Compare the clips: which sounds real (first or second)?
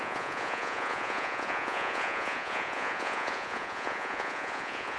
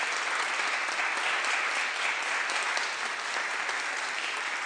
second